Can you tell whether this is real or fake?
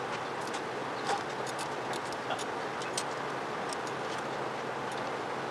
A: real